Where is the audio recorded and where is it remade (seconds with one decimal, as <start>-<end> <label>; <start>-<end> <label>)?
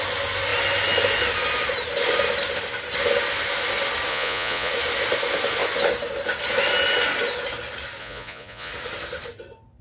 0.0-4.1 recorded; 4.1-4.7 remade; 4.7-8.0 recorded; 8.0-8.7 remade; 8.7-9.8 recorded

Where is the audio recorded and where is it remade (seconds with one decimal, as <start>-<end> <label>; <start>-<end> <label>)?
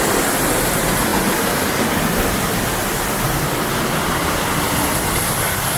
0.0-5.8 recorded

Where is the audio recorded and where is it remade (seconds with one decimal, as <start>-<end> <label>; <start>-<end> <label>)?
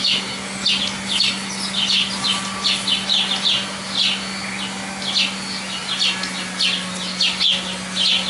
0.0-8.3 recorded